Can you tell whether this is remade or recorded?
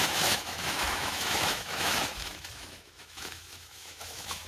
remade